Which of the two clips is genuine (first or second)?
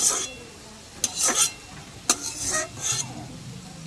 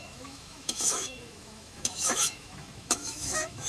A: first